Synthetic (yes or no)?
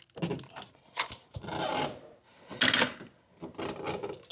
no